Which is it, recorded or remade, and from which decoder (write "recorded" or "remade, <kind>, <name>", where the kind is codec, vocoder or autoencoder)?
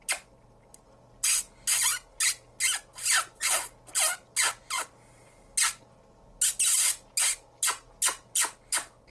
recorded